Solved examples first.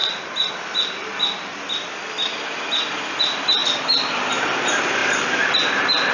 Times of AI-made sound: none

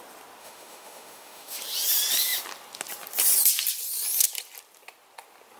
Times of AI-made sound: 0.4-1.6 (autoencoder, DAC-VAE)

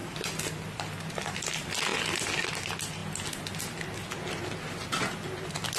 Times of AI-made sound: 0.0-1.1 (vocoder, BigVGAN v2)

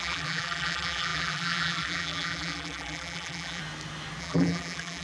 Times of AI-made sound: 0.0-3.6 (vocoder, BigVGAN v2); 4.2-5.0

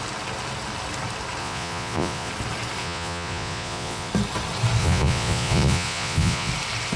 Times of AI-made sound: 1.4-2.3 (vocoder, Vocos); 2.8-4.1; 4.8-6.5

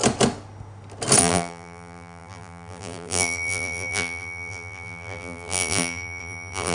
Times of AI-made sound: 1.2-6.7 (vocoder, BigVGAN v2)

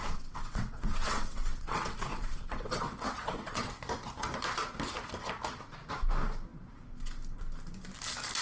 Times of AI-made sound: 0.0-3.7 (vocoder, WaveNeXt)